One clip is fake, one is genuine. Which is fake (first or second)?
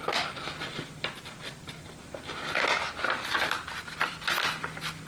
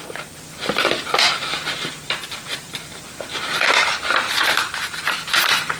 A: second